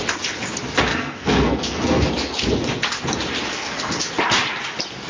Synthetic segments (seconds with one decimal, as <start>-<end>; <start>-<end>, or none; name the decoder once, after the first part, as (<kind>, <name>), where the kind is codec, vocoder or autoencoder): 0.9-2.1 (codec, SNAC); 3.5-4.0